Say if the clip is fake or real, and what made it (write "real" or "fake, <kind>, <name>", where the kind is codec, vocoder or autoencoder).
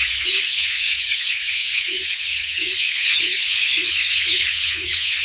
fake, codec, HILCodec